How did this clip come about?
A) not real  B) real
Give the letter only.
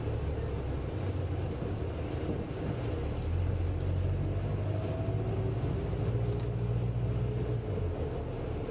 B